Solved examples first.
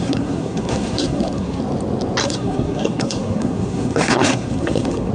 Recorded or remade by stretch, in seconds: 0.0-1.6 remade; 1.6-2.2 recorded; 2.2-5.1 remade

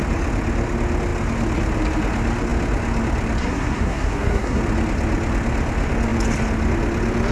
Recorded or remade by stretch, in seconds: 0.0-3.4 recorded; 3.4-4.6 remade; 4.6-7.3 recorded